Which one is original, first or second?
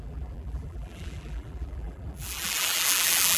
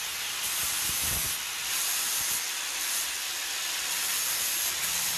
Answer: second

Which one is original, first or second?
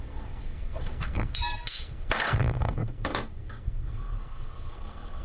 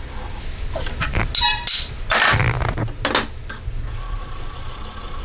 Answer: second